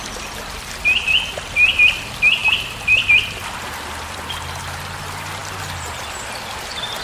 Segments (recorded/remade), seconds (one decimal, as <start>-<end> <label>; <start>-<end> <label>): 0.0-2.4 recorded; 2.4-4.2 remade; 4.2-7.0 recorded